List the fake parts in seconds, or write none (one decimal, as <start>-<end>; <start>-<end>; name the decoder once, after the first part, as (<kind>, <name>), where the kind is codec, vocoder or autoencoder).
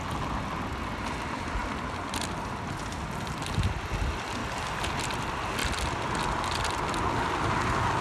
none